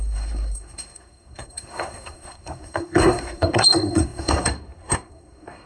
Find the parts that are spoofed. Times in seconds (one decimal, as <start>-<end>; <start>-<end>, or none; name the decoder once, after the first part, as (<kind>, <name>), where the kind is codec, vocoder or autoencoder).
0.0-5.7 (codec, SNAC)